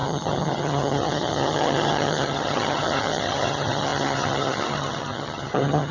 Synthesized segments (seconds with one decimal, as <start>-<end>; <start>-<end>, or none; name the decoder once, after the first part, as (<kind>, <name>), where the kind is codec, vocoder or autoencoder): 0.0-5.9 (vocoder, HiFi-GAN)